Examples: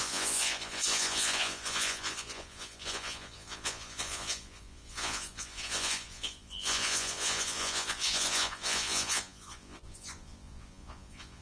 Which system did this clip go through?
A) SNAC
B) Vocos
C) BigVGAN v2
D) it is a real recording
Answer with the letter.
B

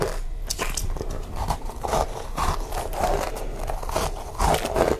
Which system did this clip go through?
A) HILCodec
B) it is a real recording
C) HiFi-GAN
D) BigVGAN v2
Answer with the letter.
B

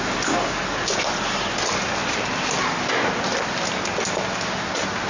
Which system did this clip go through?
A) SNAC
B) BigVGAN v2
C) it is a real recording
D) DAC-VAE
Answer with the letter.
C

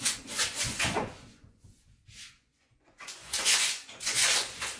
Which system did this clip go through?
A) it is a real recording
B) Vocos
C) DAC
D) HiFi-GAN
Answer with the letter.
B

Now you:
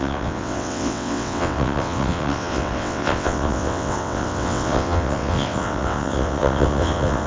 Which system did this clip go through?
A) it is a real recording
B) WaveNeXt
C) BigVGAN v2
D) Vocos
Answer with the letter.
B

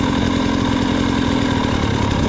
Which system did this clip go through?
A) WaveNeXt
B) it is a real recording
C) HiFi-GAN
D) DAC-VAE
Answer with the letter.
B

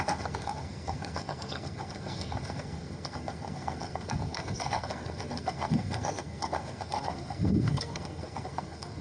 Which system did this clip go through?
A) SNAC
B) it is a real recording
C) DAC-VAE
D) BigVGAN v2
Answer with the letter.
A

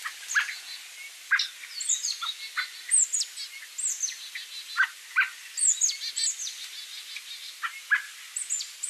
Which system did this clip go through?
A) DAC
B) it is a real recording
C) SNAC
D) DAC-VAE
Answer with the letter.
B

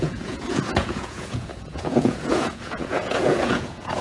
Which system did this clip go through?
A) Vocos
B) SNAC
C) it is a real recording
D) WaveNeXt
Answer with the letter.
A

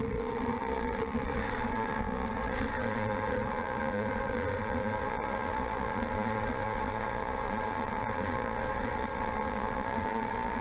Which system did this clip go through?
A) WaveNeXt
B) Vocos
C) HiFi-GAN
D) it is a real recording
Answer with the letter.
B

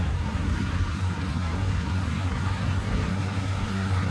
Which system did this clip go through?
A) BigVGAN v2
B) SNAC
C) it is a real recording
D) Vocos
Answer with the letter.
B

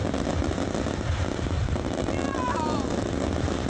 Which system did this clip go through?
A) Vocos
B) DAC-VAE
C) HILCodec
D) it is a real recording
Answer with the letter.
D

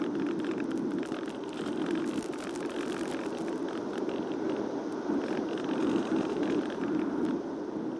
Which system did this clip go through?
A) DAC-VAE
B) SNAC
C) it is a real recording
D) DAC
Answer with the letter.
C